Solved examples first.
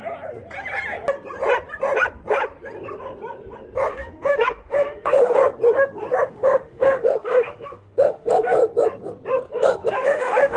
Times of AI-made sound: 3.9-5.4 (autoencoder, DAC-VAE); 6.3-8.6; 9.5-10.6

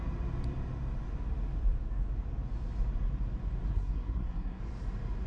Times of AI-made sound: 3.7-4.6 (codec, SNAC)

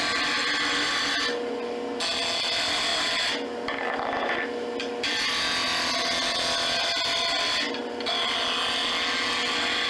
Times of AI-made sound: none

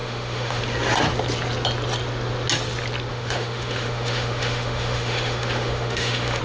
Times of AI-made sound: 0.0-0.6 (autoencoder, DAC-VAE); 3.1-6.4